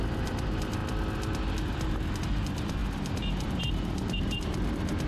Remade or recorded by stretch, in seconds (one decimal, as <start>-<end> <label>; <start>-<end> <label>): 0.0-0.8 remade; 0.8-2.2 recorded; 2.2-5.1 remade

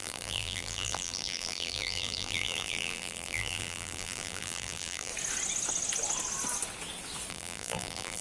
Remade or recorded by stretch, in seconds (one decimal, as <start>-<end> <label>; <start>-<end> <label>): 0.0-5.1 remade; 5.1-7.3 recorded; 7.3-8.2 remade

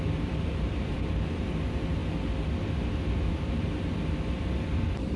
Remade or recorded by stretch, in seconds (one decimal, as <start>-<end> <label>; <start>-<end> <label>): 0.0-2.0 remade; 2.0-2.9 recorded; 2.9-3.9 remade; 3.9-4.4 recorded; 4.4-5.2 remade

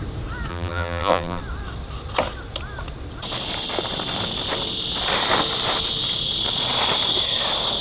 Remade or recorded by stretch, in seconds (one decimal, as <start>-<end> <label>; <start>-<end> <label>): 0.0-0.5 recorded; 0.5-1.4 remade; 1.4-7.8 recorded

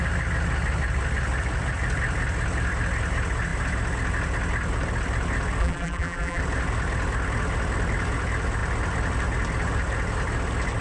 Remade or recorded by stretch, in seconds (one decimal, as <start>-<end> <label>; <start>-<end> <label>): 0.0-5.6 recorded; 5.6-6.4 remade; 6.4-10.8 recorded